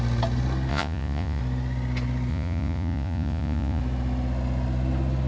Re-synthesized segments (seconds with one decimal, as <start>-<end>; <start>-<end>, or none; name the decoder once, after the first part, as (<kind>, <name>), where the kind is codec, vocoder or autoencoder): 0.7-1.4 (vocoder, Vocos); 2.3-3.8